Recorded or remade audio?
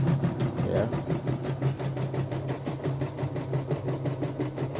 recorded